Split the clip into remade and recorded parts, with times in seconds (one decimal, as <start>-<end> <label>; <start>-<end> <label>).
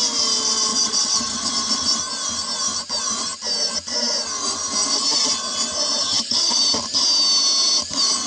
0.0-0.7 recorded; 0.7-1.5 remade; 1.5-6.0 recorded; 6.0-6.6 remade; 6.6-8.3 recorded